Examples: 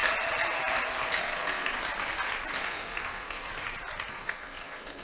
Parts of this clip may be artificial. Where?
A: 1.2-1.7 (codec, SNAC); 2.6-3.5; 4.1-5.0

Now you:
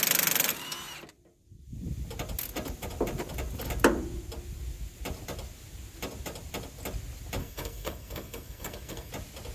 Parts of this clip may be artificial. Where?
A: 7.4-9.1 (codec, SNAC)

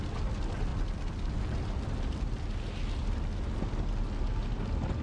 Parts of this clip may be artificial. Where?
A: none

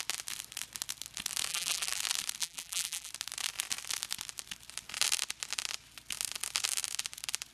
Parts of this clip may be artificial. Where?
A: 1.5-2.0 (vocoder, BigVGAN v2); 2.4-3.1

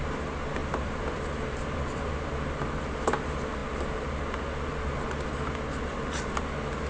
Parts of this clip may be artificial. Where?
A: 0.6-2.1 (vocoder, BigVGAN v2)

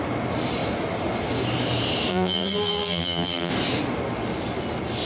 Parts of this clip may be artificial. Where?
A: 2.1-3.5 (vocoder, BigVGAN v2)

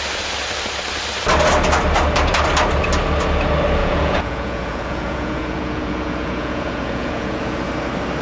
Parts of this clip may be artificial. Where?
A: 3.8-7.7 (vocoder, Vocos)

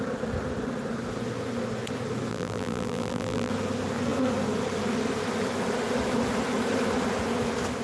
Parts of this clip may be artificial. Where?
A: 2.3-3.5 (vocoder, BigVGAN v2)